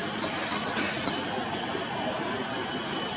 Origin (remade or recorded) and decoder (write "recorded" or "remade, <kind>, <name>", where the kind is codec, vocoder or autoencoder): recorded